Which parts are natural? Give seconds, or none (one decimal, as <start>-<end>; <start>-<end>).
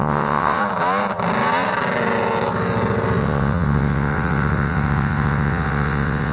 0.6-3.2